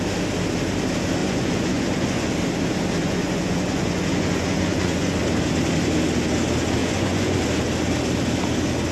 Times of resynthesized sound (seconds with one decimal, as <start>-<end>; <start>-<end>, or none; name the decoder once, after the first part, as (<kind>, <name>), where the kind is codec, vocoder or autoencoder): 1.2-2.3 (vocoder, Vocos); 3.0-5.2; 6.8-7.4

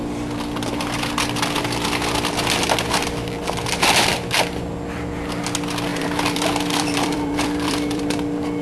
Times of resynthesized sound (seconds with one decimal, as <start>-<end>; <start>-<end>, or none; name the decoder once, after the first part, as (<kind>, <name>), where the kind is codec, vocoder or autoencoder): 5.9-8.0 (vocoder, BigVGAN v2)

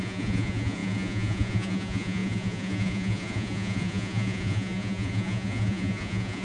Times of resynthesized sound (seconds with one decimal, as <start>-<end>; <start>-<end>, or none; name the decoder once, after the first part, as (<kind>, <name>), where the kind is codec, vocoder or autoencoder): 0.0-6.4 (vocoder, Vocos)